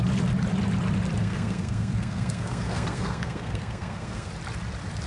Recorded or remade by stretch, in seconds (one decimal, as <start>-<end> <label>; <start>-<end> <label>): 0.0-1.2 recorded; 1.2-4.3 remade; 4.3-5.1 recorded